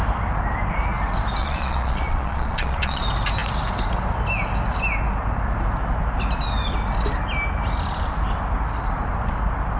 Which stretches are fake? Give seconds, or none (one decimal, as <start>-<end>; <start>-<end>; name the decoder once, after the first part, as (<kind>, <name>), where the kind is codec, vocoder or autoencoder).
1.4-3.0 (vocoder, Vocos)